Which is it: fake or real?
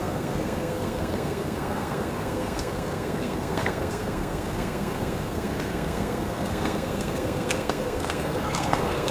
fake